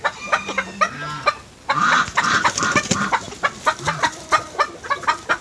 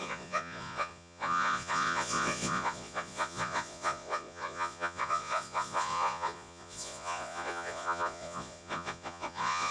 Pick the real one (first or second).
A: first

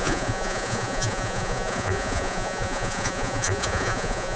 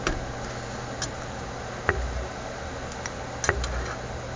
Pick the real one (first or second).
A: second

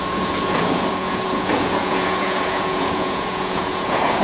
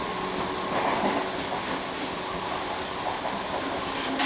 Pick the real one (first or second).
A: second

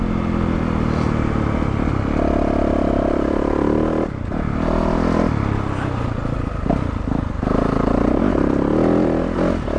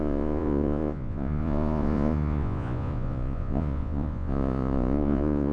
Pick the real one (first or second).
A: first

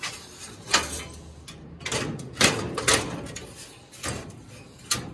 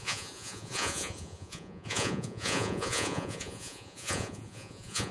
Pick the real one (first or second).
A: first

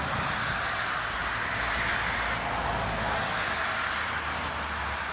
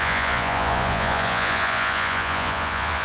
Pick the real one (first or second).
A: first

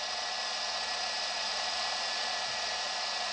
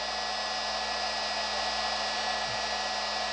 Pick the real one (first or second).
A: second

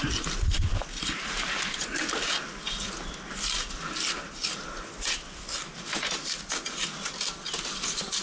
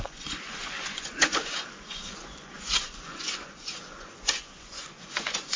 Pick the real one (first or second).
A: first